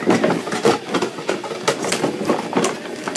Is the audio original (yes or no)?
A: yes